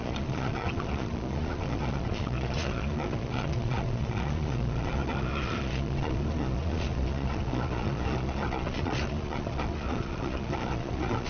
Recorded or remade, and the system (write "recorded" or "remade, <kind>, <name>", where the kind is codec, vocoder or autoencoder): remade, vocoder, Vocos